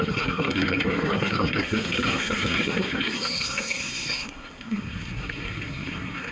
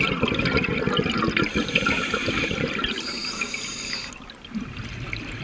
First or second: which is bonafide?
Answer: second